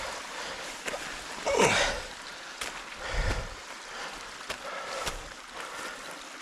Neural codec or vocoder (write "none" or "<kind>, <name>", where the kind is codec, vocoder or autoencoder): none